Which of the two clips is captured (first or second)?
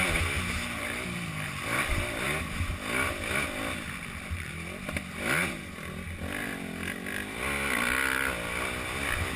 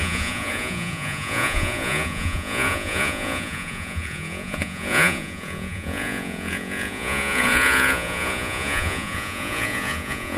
first